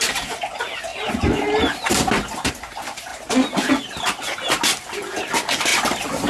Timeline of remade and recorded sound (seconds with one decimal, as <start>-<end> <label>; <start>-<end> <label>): 0.0-0.9 recorded; 0.9-2.5 remade; 2.5-3.1 recorded; 3.1-3.7 remade; 3.7-5.7 recorded; 5.7-6.3 remade